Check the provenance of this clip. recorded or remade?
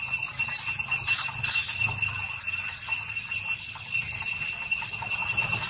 recorded